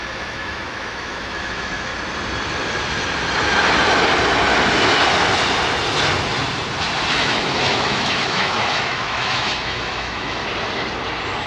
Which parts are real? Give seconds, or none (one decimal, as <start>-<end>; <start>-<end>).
1.9-7.1; 10.4-11.5